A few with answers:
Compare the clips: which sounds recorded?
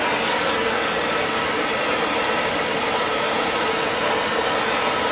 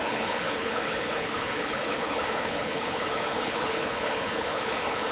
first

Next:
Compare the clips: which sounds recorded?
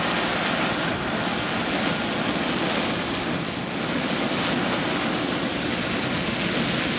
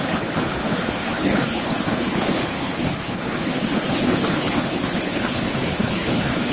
first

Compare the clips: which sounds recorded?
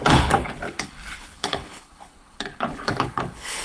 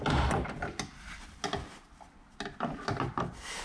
second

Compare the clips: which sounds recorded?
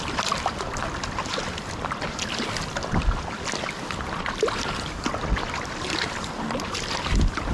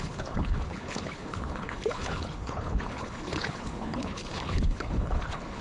first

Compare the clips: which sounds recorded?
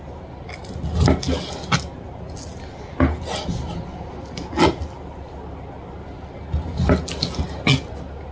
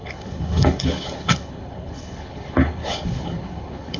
first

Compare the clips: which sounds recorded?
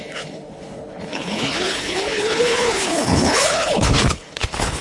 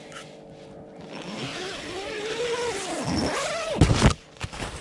second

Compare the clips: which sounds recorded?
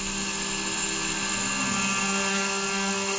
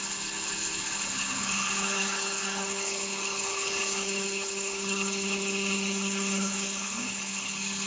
first